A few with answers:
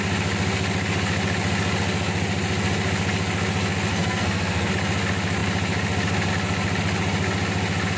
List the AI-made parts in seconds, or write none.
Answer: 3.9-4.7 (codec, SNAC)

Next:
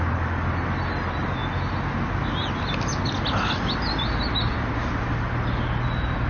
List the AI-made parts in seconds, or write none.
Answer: none

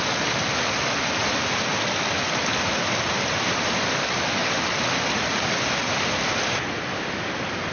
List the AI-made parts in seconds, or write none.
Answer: none